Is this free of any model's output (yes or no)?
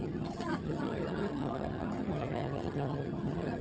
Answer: no